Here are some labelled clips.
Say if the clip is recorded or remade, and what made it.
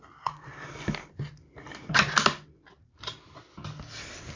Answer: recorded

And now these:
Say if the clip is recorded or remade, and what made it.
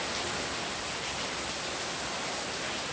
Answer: recorded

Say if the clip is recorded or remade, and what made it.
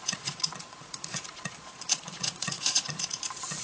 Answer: remade, vocoder, Vocos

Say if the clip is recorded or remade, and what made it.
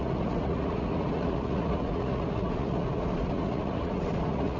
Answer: remade, vocoder, Vocos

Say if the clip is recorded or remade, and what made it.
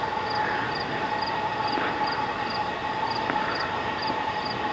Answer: recorded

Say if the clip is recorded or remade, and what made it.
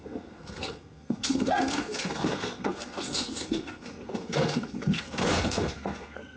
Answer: remade, codec, SNAC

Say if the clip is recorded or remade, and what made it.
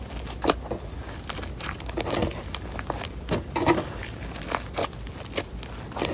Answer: recorded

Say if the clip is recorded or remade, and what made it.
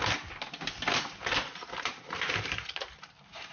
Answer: remade, vocoder, BigVGAN v2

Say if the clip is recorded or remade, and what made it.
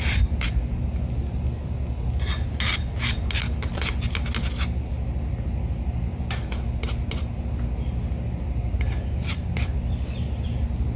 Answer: recorded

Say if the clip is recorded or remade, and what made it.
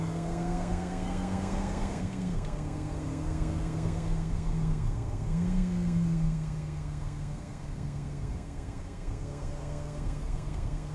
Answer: remade, codec, SNAC